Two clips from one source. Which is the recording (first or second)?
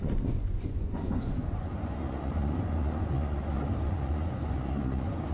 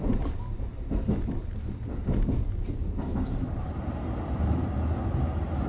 second